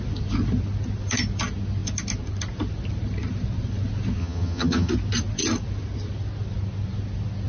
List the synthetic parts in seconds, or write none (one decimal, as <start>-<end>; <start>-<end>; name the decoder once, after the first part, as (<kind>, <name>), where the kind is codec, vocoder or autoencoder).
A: 4.2-4.9 (vocoder, HiFi-GAN)